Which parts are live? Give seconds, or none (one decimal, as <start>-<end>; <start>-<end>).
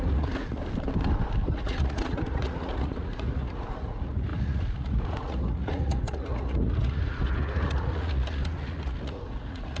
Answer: 0.6-1.5